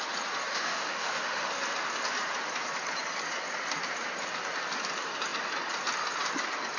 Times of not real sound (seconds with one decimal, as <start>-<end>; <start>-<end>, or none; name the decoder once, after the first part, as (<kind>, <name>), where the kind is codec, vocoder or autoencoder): 0.5-1.5 (autoencoder, DAC-VAE)

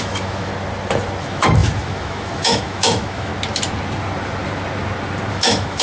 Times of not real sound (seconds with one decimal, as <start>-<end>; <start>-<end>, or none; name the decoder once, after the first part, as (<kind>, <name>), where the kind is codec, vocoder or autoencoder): 0.0-0.5 (autoencoder, DAC-VAE); 1.2-3.3; 5.3-5.8

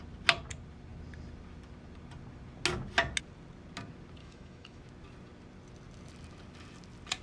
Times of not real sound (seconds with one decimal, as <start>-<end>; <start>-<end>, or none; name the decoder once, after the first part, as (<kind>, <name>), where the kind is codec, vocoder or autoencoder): 4.2-4.8 (autoencoder, DAC-VAE)

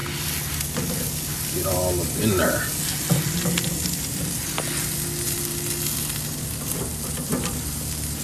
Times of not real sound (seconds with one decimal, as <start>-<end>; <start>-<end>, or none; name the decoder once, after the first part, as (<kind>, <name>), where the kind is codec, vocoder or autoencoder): none

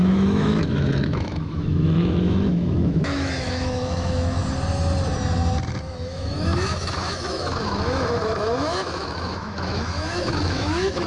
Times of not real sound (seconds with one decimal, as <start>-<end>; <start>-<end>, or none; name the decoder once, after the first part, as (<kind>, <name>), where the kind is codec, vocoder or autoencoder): 0.0-4.4 (autoencoder, DAC-VAE); 5.8-11.1

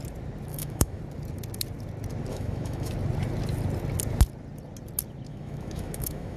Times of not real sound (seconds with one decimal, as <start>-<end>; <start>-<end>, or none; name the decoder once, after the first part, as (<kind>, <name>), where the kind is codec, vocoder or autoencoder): 0.5-1.0 (autoencoder, DAC-VAE); 2.3-2.9; 5.3-6.4

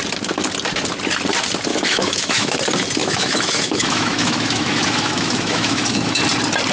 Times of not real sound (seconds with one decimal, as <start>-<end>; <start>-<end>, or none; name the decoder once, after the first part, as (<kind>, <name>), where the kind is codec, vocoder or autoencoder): 1.7-2.6 (autoencoder, DAC-VAE); 3.0-6.2

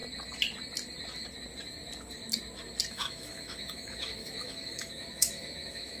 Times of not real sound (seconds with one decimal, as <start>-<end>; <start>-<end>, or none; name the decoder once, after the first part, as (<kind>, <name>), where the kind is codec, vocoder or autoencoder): 2.9-6.0 (autoencoder, DAC-VAE)